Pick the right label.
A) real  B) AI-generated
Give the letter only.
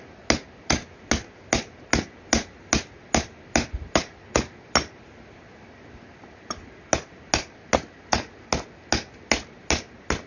A